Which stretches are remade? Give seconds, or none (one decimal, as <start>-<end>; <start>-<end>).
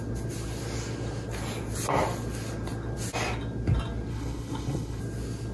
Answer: 4.1-5.0